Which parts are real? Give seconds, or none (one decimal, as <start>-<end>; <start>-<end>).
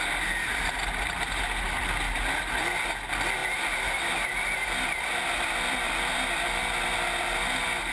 0.0-7.9